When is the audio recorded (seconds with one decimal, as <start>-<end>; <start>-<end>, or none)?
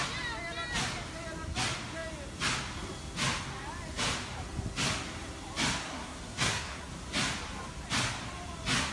0.0-5.8; 6.9-8.9